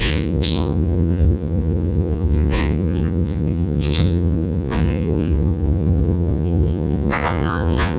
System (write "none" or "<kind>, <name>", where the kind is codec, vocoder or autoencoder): vocoder, Vocos